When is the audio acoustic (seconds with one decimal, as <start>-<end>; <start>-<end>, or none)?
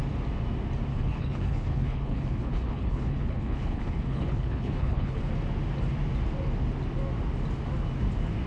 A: 0.0-0.9; 5.3-8.5